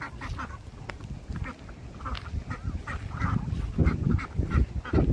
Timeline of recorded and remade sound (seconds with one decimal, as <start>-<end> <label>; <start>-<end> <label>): 0.0-5.1 recorded